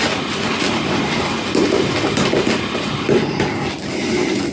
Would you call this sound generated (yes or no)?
no